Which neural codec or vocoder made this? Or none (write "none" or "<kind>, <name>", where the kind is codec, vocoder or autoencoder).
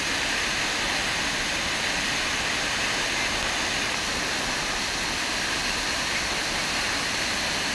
none